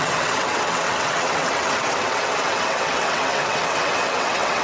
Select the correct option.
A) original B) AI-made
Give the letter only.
B